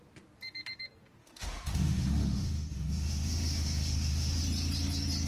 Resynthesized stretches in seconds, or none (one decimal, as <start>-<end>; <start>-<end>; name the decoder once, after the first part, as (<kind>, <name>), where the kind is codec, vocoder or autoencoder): 1.2-4.4 (autoencoder, DAC-VAE)